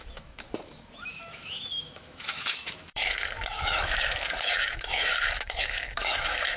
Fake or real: fake